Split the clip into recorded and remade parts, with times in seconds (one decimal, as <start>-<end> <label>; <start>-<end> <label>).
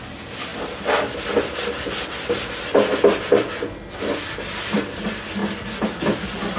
0.0-6.6 recorded